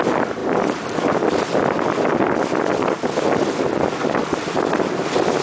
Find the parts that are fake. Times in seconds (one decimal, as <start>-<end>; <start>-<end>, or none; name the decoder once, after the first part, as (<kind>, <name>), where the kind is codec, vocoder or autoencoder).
0.4-2.5 (vocoder, BigVGAN v2); 4.2-5.4